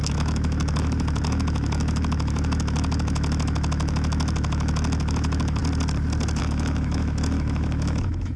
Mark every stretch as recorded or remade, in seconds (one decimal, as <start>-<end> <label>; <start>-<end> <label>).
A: 0.0-5.6 remade; 5.6-6.4 recorded; 6.4-8.4 remade